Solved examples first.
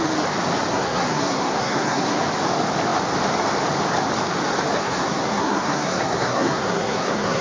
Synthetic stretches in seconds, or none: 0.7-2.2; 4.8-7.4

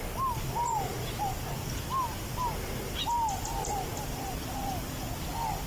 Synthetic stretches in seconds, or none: none

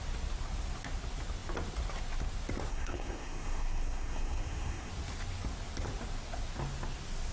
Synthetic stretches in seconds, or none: 2.7-4.9

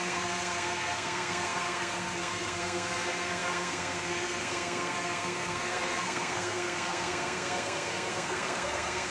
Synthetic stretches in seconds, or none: 0.0-9.1

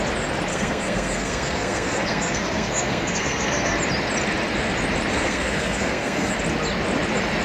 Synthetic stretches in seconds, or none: 0.5-3.8; 5.1-6.3